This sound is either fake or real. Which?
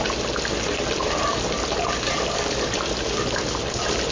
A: real